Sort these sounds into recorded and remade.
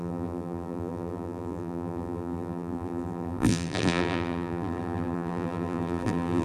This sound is remade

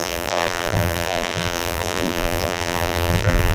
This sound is remade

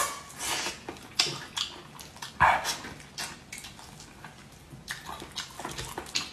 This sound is recorded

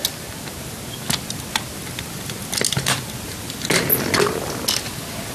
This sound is recorded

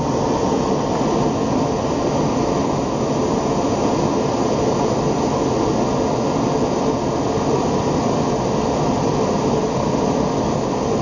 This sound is recorded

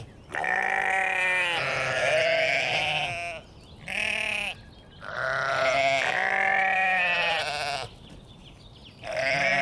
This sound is recorded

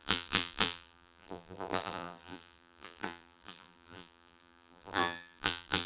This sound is remade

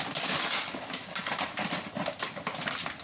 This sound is recorded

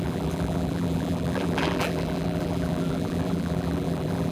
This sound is remade